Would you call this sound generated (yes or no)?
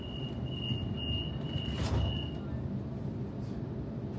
no